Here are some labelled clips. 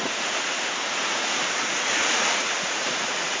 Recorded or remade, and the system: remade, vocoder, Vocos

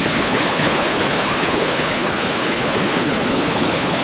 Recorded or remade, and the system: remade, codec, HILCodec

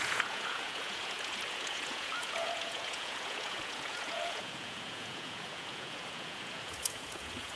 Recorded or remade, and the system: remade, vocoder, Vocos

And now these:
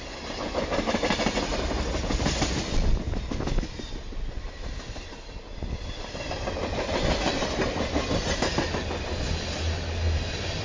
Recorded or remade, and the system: recorded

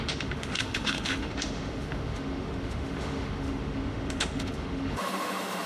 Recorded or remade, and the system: remade, autoencoder, DAC-VAE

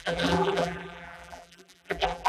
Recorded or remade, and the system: remade, vocoder, BigVGAN v2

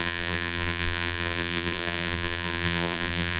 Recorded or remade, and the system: remade, vocoder, BigVGAN v2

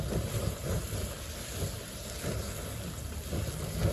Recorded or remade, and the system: recorded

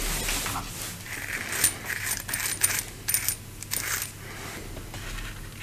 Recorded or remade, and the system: recorded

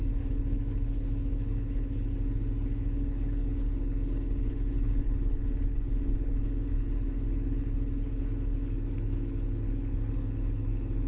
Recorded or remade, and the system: remade, codec, HILCodec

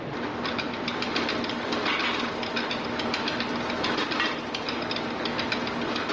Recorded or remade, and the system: recorded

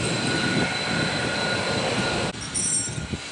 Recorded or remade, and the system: recorded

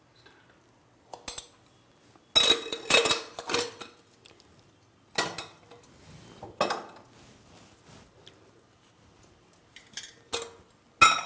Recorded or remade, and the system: recorded